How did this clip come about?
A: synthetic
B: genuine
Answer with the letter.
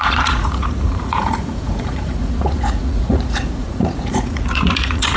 A